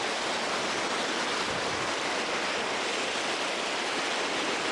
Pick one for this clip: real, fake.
real